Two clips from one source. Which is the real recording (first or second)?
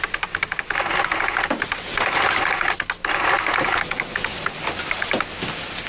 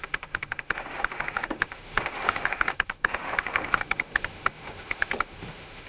first